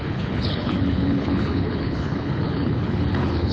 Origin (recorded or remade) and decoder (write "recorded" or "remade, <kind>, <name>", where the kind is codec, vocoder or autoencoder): remade, codec, HILCodec